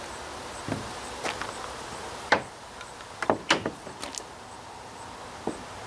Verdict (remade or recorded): recorded